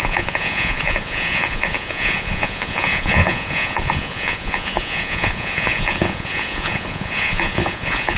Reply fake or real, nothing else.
fake